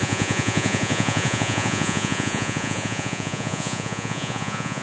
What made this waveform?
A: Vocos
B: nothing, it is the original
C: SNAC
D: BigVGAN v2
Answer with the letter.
A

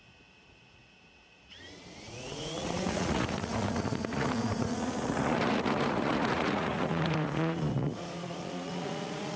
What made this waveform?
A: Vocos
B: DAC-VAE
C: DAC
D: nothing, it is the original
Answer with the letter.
A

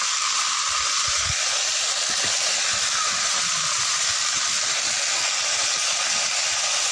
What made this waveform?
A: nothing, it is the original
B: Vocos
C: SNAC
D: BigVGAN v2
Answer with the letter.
A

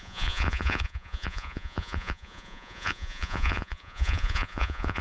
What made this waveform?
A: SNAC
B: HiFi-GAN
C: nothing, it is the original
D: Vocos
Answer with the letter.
D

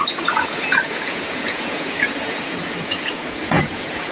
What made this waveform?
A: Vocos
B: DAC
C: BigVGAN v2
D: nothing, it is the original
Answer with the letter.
A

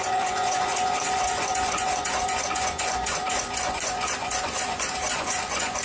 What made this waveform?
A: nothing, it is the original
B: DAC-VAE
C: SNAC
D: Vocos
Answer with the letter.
D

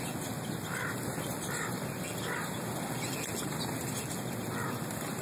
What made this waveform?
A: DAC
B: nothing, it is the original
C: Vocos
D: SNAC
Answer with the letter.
B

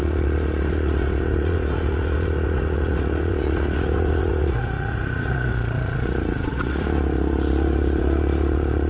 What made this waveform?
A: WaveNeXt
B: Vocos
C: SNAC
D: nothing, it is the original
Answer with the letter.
B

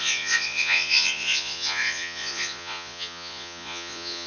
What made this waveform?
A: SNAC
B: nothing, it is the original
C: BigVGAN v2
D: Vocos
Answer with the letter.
D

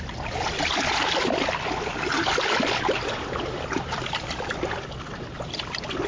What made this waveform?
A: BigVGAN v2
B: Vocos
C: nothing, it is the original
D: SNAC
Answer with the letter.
C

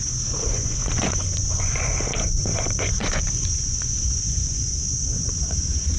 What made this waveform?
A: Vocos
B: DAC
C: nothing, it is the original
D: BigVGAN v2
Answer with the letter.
A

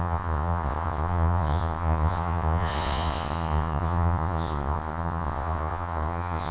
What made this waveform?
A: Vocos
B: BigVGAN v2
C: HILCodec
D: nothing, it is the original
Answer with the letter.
A